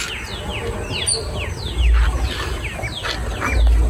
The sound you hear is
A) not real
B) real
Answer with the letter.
B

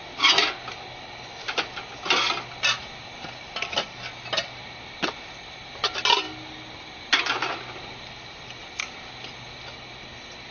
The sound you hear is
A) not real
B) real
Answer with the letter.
B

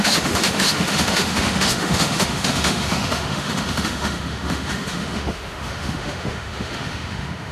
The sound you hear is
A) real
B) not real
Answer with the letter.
B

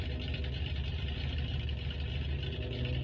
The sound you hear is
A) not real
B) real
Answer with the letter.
B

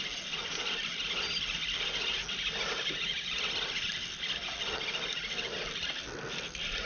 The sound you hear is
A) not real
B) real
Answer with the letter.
B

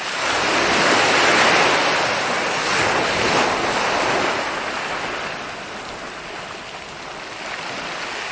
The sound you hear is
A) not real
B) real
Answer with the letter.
B